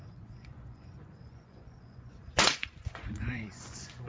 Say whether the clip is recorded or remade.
remade